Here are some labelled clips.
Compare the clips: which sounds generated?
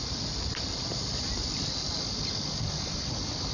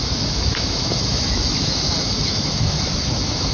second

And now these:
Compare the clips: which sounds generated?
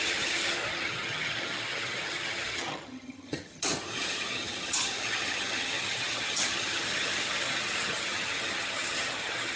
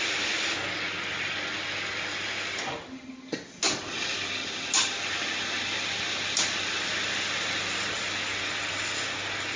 first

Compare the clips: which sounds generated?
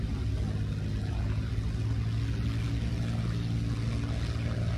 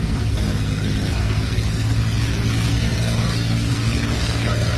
second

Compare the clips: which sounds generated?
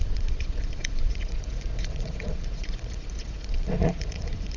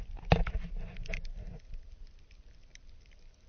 first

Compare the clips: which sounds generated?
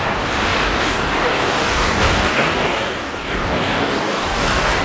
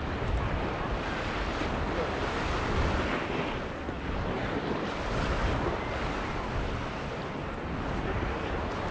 first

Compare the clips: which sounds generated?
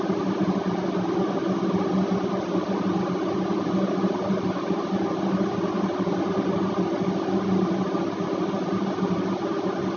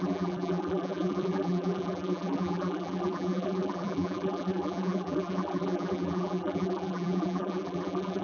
second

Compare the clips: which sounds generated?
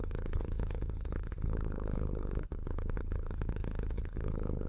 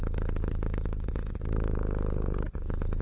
first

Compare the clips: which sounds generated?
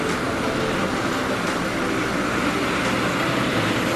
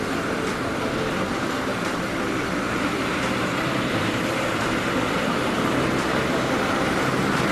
second